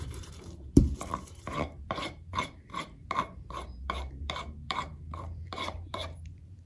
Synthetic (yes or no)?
yes